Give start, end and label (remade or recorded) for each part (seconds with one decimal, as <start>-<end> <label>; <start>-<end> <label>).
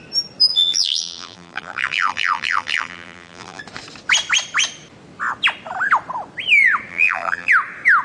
0.0-0.5 recorded; 0.5-3.6 remade; 3.6-6.9 recorded; 6.9-7.5 remade; 7.5-8.0 recorded